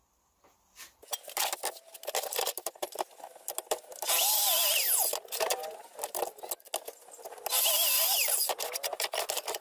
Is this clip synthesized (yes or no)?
no